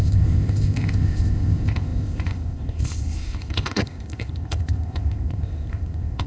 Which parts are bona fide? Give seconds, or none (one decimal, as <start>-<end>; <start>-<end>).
none